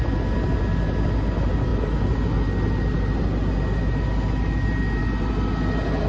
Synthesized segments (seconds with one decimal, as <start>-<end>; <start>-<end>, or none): none